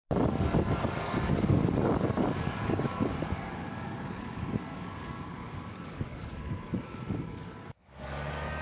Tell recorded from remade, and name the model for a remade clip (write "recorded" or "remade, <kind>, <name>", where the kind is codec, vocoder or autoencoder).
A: remade, codec, DAC